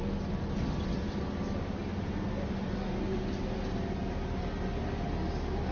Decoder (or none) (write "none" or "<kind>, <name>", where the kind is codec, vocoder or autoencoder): none